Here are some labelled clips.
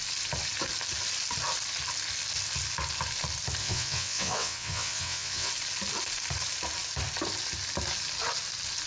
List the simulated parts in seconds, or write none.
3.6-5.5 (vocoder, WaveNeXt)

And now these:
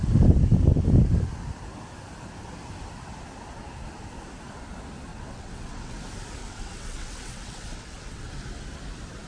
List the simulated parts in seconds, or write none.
5.1-6.0 (vocoder, WaveNeXt); 6.4-8.3

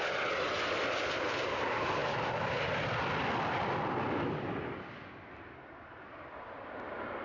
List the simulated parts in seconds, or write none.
none